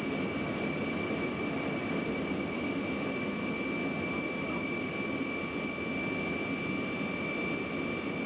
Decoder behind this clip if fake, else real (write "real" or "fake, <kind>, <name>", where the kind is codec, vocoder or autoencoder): real